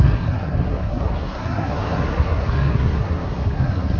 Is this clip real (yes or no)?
no